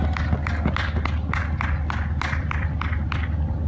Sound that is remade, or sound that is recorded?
recorded